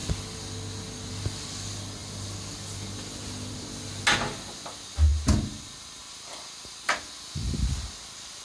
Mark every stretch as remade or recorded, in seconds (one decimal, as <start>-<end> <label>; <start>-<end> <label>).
0.0-8.4 recorded